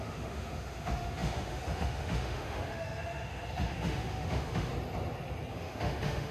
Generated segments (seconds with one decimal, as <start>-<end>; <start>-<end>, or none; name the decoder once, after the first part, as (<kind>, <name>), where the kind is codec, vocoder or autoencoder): 0.0-4.7 (autoencoder, DAC-VAE); 5.5-6.3